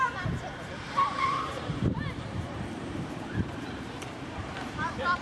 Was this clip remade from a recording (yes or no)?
yes